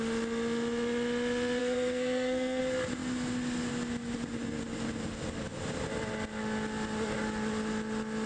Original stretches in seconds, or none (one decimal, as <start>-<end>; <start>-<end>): 0.0-1.6; 2.6-8.3